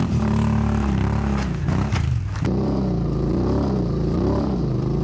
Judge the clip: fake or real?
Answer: fake